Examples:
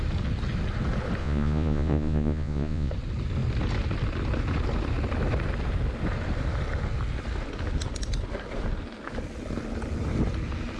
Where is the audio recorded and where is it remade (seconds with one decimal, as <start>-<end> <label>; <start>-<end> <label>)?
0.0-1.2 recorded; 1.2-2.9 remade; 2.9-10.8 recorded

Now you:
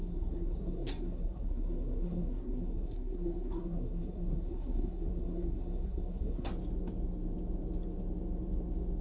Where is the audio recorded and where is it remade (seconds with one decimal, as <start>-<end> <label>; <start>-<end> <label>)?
0.0-6.5 remade; 6.5-9.0 recorded

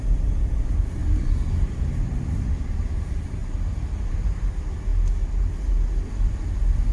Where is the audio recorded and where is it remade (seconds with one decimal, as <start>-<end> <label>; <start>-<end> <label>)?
0.0-4.9 remade; 4.9-6.1 recorded; 6.1-6.9 remade

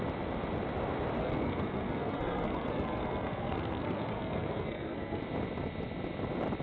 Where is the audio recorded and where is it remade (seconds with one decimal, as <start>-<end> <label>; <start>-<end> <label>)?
0.0-1.2 recorded; 1.2-5.2 remade; 5.2-6.6 recorded

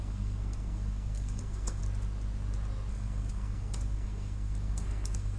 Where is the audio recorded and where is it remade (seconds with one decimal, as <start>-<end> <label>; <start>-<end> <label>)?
0.0-1.8 remade; 1.8-2.9 recorded; 2.9-5.4 remade

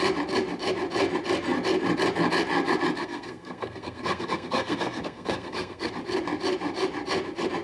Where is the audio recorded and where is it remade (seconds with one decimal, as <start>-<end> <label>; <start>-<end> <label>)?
0.0-3.0 recorded; 3.0-5.9 remade; 5.9-7.6 recorded